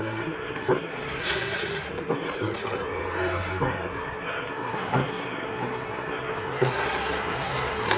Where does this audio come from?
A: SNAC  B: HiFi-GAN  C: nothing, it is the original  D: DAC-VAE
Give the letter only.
A